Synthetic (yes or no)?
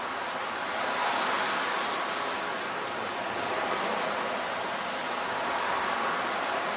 no